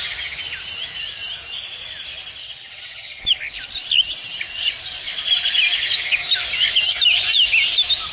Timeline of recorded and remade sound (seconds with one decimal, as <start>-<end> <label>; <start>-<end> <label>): 0.0-2.4 recorded; 2.4-3.2 remade; 3.2-8.1 recorded